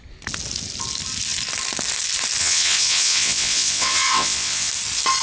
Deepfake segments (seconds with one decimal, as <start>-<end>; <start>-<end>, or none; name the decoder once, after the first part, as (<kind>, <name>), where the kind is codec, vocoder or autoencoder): 2.4-4.7 (vocoder, WaveNeXt)